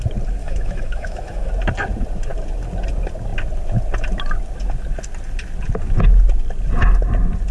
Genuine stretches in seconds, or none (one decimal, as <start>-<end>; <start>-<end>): 0.0-0.4; 1.5-7.5